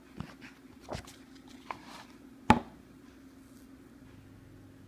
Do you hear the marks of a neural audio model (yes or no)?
no